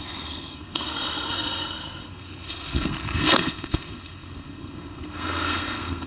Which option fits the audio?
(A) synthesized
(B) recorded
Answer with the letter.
A